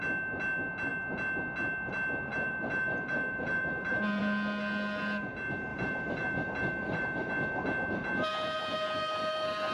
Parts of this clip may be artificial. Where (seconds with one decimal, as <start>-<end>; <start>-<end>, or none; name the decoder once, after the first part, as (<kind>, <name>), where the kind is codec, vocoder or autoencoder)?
2.3-4.2 (vocoder, BigVGAN v2); 5.7-7.3